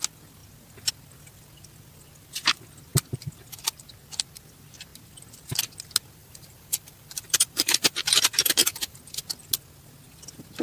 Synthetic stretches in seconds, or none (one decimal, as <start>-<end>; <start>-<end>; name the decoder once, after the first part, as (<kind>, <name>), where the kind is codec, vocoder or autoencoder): 6.2-9.0 (vocoder, BigVGAN v2)